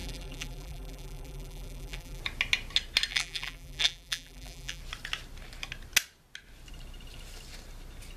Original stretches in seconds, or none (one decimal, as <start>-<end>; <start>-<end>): 2.2-3.1; 4.8-8.2